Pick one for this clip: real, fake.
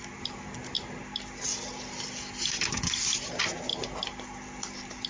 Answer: real